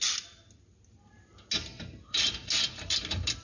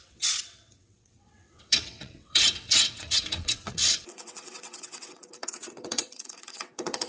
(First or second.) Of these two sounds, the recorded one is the first